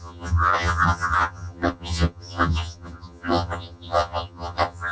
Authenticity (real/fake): fake